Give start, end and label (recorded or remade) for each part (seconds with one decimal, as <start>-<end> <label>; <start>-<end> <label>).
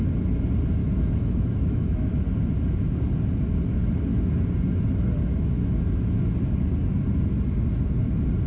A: 0.0-0.8 recorded; 0.8-2.1 remade; 2.1-5.3 recorded; 5.3-6.2 remade; 6.2-8.5 recorded